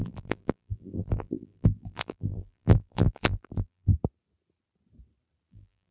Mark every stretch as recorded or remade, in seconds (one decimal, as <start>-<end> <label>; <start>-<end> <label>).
0.0-3.9 remade; 3.9-5.5 recorded; 5.5-5.9 remade